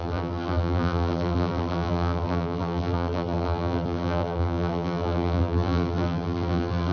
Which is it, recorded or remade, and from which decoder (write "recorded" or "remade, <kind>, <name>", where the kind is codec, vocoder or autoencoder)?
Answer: remade, vocoder, BigVGAN v2